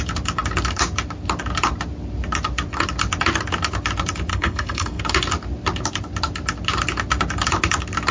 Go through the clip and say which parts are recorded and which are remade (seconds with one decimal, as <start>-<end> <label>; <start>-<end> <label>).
0.0-4.3 recorded; 4.3-5.0 remade; 5.0-8.1 recorded